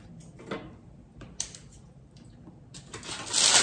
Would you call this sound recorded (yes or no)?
yes